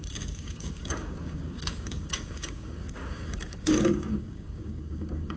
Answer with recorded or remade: remade